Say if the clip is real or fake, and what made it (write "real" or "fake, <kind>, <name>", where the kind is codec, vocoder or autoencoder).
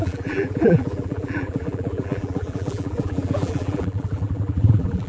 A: fake, vocoder, BigVGAN v2